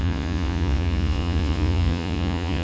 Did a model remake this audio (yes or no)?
yes